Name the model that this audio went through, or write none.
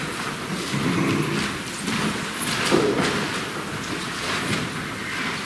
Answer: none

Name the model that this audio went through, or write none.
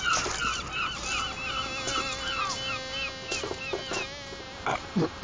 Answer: none